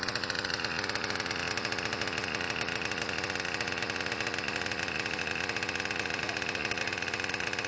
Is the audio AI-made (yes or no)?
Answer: no